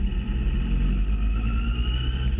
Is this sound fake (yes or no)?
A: no